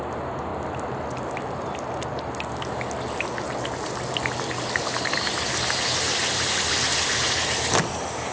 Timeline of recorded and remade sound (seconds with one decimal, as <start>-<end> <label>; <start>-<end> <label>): 0.0-8.3 recorded